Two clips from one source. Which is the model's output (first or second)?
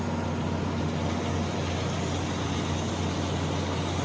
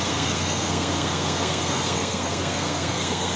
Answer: second